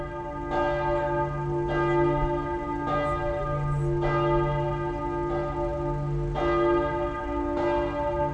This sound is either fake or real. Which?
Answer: real